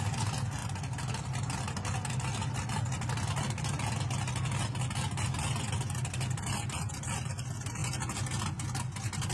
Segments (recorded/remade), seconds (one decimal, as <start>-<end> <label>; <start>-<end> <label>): 0.0-9.3 recorded